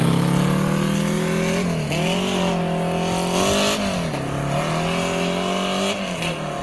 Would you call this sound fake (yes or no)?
no